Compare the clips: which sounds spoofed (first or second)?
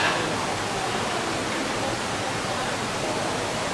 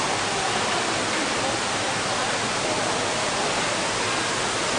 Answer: first